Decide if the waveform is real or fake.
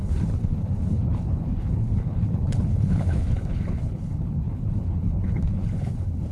fake